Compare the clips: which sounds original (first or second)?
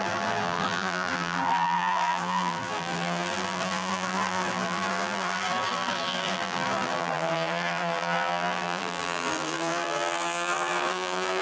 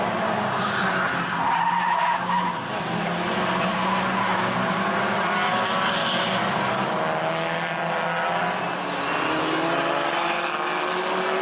second